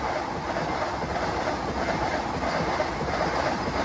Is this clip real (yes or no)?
yes